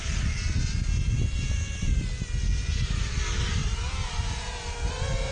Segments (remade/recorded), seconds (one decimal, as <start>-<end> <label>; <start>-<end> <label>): 0.0-5.3 recorded